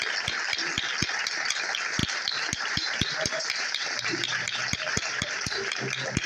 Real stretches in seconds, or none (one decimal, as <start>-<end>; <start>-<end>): 0.0-2.0; 5.8-6.3